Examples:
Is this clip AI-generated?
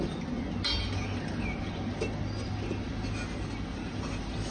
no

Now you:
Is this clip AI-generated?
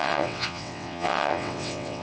yes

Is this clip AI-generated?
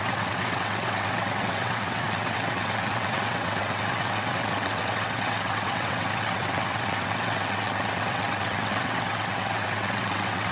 yes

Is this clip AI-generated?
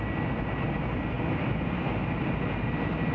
no